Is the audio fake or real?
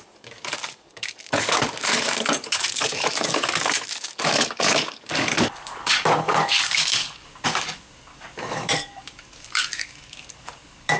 fake